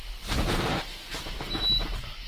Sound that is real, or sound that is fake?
real